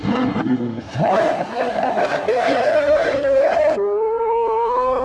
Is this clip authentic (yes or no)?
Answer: no